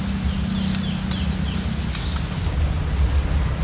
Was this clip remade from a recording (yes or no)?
no